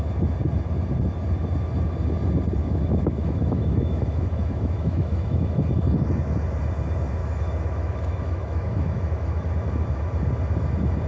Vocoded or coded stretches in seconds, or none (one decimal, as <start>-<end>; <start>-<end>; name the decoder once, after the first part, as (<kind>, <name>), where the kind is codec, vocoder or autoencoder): 2.6-5.6 (autoencoder, DAC-VAE); 7.2-9.5